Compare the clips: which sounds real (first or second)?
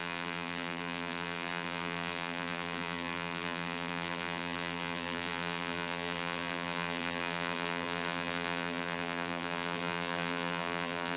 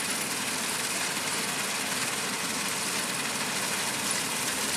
second